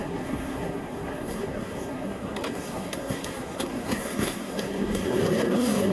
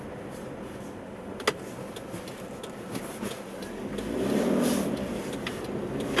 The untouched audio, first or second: second